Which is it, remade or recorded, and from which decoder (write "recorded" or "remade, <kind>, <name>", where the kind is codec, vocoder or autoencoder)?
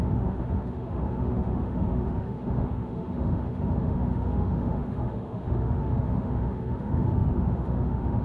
remade, autoencoder, DAC-VAE